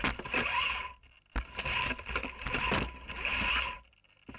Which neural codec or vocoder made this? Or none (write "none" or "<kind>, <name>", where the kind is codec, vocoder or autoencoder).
none